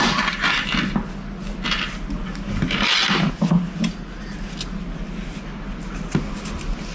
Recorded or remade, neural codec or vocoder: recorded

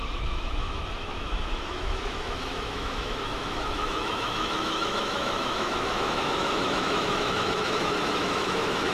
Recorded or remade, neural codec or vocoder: remade, autoencoder, DAC-VAE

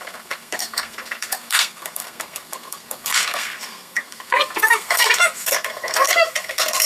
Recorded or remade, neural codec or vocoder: remade, codec, SNAC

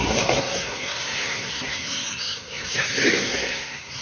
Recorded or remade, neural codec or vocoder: remade, codec, SNAC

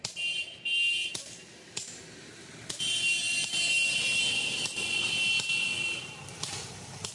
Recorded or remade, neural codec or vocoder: recorded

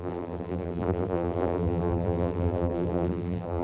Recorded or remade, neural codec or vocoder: remade, vocoder, BigVGAN v2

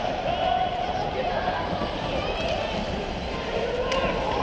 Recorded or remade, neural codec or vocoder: recorded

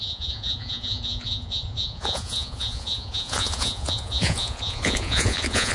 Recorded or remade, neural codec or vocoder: remade, vocoder, Vocos